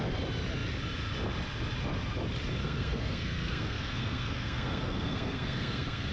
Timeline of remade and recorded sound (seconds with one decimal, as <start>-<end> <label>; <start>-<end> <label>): 0.0-2.6 recorded; 2.6-6.1 remade